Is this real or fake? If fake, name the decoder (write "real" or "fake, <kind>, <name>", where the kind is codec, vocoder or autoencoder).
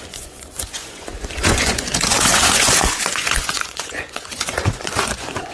fake, vocoder, Vocos